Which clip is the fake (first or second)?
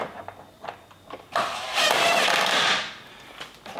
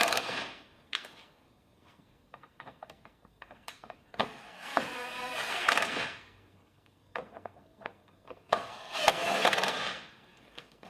second